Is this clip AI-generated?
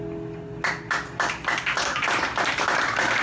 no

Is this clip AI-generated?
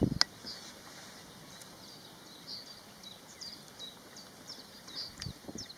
no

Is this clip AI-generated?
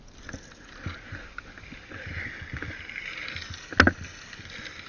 no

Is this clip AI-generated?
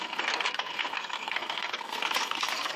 yes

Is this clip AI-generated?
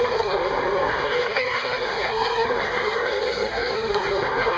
yes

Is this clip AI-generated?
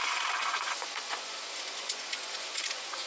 yes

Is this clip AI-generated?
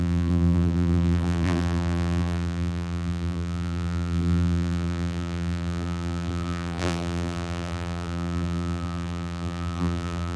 yes